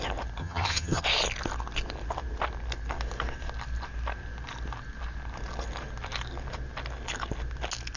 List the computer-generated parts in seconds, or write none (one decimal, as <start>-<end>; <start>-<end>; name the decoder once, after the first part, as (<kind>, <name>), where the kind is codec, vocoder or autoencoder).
0.4-1.0 (vocoder, HiFi-GAN)